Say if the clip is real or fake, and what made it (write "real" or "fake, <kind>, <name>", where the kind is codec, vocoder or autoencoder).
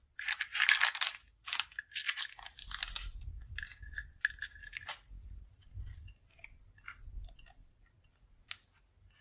real